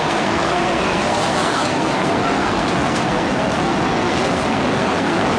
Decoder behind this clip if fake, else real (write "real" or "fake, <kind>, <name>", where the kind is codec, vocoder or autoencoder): fake, codec, SNAC